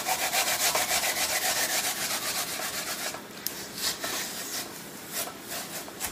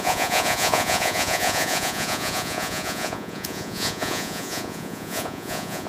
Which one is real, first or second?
first